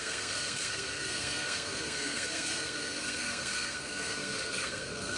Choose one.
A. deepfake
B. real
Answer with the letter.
A